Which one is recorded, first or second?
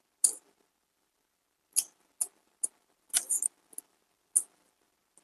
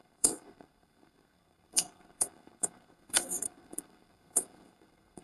first